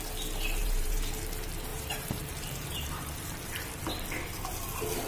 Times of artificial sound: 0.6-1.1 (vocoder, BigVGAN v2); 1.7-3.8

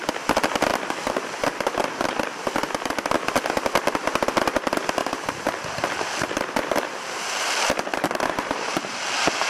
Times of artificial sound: 0.7-3.1 (vocoder, BigVGAN v2); 5.0-9.0